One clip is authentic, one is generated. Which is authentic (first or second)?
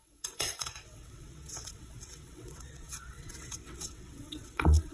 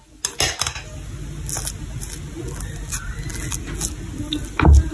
second